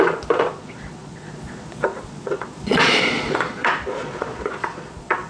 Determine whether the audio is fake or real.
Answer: fake